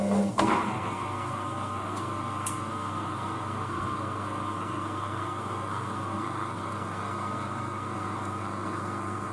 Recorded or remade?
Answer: remade